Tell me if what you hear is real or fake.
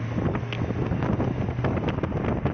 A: real